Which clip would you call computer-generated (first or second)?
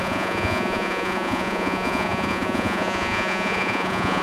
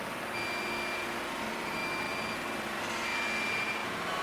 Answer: first